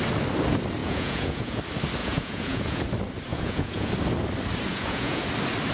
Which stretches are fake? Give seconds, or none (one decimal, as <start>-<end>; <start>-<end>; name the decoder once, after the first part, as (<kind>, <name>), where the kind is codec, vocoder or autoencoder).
0.8-1.6 (vocoder, Vocos); 2.0-2.8; 3.3-3.9; 4.7-5.2